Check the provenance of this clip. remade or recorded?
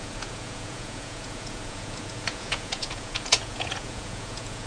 remade